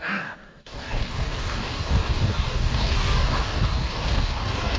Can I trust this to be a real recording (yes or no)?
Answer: no